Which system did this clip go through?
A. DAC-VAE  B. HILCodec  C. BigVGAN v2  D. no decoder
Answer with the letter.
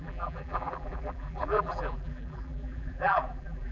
C